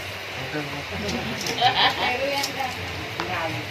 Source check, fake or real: real